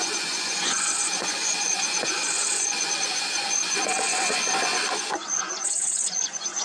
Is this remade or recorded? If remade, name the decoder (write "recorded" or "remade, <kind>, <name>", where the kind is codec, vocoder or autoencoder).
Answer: remade, vocoder, Vocos